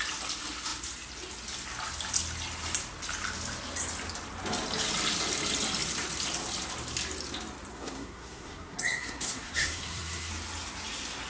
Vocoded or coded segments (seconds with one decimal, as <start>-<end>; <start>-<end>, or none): 7.7-10.3